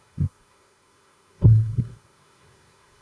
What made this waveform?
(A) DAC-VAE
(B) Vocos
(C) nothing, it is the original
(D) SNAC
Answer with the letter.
D